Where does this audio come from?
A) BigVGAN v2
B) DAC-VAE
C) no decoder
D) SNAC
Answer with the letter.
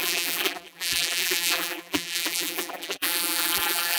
A